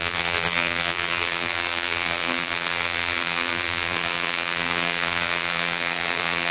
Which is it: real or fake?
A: fake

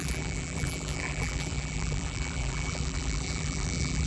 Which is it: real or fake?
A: fake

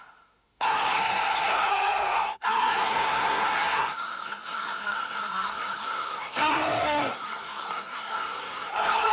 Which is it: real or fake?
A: fake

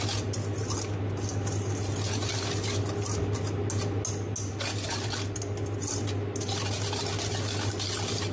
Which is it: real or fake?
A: real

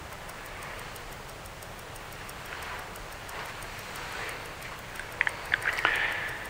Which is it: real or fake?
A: fake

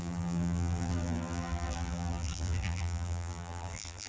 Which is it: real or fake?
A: fake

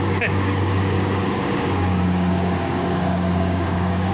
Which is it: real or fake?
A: fake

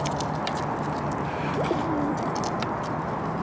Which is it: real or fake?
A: real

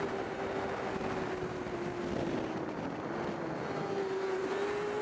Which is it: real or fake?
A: real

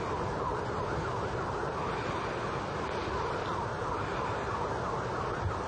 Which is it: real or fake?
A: real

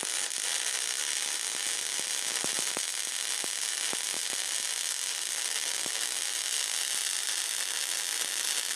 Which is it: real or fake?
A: real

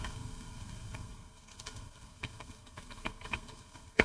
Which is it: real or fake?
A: fake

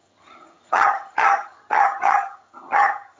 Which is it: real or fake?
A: fake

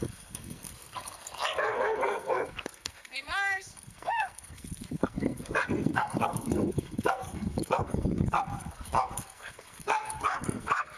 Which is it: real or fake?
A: fake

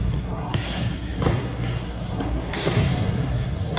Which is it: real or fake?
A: fake